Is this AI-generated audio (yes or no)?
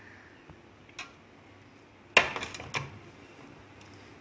no